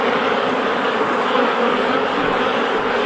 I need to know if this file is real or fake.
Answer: fake